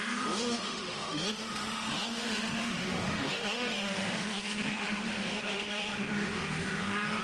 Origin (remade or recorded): remade